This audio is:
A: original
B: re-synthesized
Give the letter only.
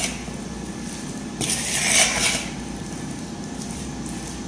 A